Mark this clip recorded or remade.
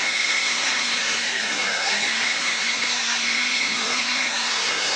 remade